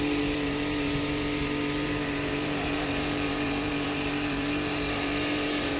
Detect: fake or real fake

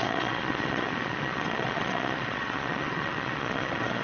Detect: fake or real fake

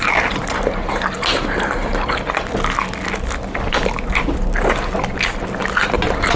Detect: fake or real real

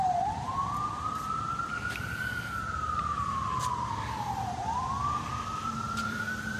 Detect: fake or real fake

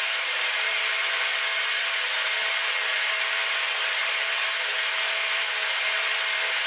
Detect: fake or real fake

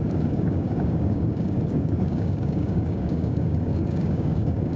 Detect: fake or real fake